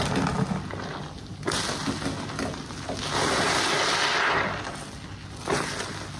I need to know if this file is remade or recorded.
recorded